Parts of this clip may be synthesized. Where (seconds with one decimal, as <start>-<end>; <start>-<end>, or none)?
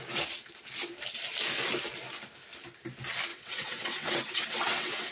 3.3-5.1